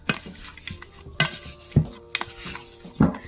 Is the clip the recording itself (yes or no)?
yes